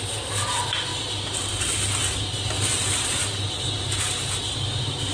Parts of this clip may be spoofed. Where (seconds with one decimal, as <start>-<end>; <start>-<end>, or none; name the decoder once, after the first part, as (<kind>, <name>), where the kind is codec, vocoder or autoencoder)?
none